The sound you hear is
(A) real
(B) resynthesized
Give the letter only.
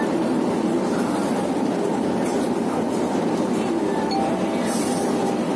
A